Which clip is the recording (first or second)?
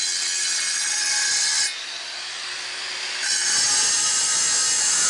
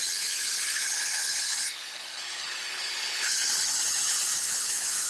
first